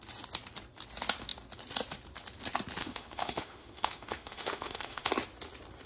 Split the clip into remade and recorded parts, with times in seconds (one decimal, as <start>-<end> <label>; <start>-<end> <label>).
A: 0.0-2.8 recorded; 2.8-5.1 remade; 5.1-5.9 recorded

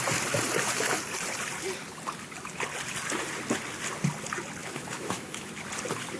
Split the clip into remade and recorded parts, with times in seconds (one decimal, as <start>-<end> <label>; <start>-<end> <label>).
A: 0.0-4.6 recorded; 4.6-5.5 remade; 5.5-6.2 recorded

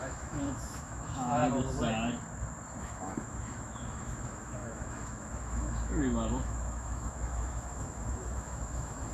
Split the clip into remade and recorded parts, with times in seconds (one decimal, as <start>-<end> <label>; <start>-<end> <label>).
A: 0.0-1.4 remade; 1.4-2.8 recorded; 2.8-9.1 remade

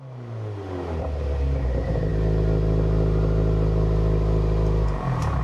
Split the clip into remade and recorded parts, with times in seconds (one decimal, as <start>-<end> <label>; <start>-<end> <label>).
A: 0.0-5.4 recorded

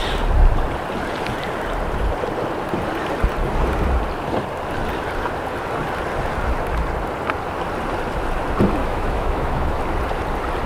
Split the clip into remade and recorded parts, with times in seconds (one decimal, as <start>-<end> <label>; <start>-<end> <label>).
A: 0.0-8.8 recorded; 8.8-9.8 remade; 9.8-10.7 recorded